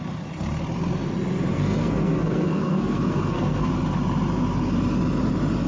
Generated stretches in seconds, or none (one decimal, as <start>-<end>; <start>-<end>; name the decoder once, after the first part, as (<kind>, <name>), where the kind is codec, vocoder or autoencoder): 1.5-3.7 (codec, SNAC)